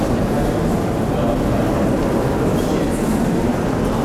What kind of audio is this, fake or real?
real